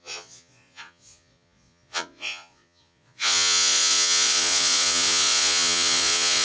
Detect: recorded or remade remade